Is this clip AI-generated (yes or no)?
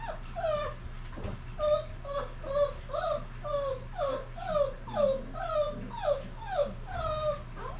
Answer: no